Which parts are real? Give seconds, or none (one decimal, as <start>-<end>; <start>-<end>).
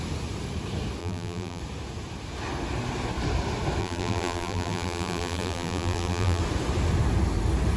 0.0-1.0; 1.6-3.8; 6.4-7.8